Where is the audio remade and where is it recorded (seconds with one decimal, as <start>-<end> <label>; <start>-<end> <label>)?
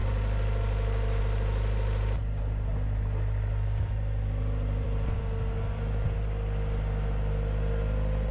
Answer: 0.0-2.2 recorded; 2.2-5.2 remade; 5.2-8.3 recorded